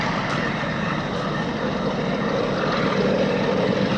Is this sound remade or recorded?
recorded